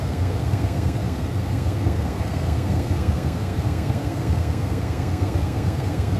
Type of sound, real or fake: fake